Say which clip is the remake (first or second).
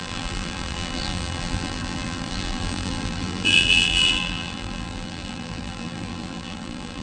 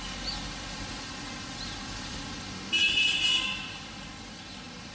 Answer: first